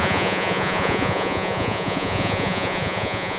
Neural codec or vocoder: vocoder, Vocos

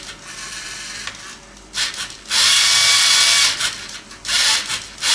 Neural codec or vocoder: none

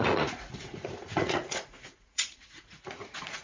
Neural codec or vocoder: vocoder, Vocos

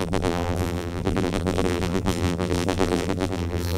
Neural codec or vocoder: vocoder, BigVGAN v2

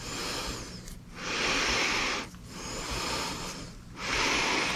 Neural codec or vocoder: none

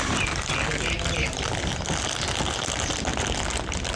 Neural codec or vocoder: none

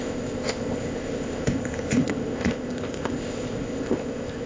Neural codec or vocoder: codec, ZipCodec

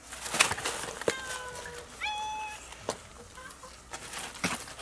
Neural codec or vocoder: none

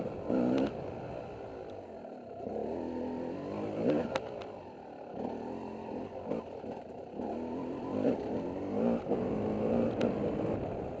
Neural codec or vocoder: none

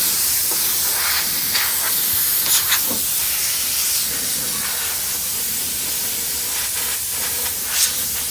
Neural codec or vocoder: none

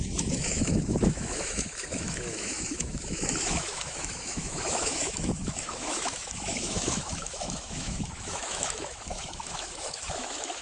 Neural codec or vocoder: autoencoder, DAC-VAE